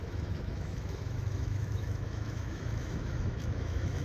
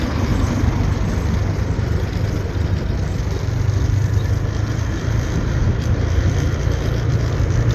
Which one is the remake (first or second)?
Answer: first